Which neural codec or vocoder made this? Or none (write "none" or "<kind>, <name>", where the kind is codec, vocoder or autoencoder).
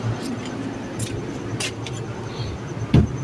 none